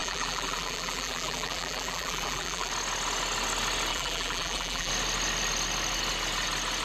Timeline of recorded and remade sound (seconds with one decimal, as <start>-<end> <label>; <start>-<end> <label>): 0.0-2.7 remade; 2.7-3.9 recorded; 3.9-4.9 remade; 4.9-6.8 recorded